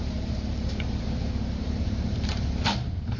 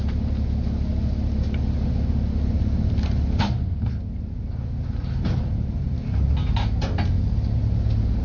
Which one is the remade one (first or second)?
first